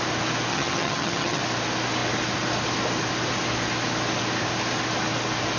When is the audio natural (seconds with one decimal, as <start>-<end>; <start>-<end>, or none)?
0.0-0.5; 1.4-5.6